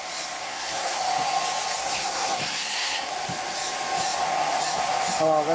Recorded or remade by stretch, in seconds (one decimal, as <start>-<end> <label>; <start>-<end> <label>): 0.0-0.4 recorded; 0.4-1.0 remade; 1.0-1.8 recorded; 1.8-3.1 remade; 3.1-5.5 recorded